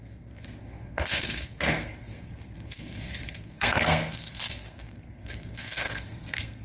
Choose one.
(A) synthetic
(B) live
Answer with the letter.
A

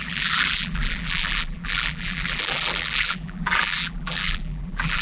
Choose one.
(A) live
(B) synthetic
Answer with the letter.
B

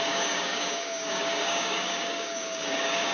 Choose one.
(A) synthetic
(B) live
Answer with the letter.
A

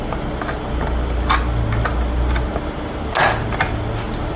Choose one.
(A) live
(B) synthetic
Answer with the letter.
A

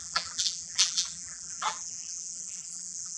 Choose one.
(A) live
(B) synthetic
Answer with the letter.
B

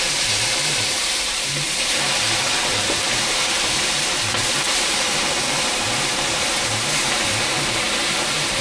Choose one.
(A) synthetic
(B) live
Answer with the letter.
A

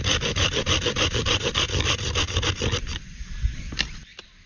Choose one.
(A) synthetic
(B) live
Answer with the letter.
A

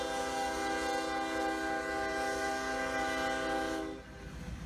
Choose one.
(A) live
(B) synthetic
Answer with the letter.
A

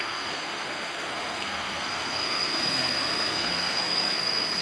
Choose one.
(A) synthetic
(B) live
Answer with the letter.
A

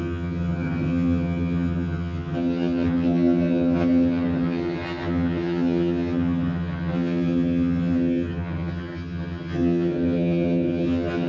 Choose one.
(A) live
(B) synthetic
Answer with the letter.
B